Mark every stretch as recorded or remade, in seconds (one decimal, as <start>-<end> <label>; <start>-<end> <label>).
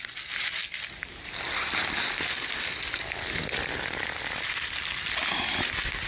0.0-6.1 recorded